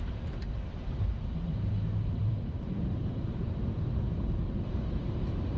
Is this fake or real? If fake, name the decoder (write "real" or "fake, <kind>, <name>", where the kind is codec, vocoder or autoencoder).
fake, vocoder, BigVGAN v2